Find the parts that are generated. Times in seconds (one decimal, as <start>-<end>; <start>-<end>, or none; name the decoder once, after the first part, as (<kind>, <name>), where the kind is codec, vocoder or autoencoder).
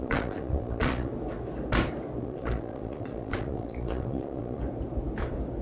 0.0-1.1 (vocoder, Vocos); 2.2-4.6